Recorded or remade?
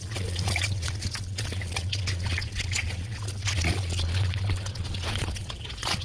remade